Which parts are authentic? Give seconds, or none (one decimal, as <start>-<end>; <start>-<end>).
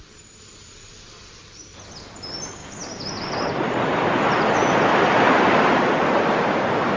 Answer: 0.0-7.0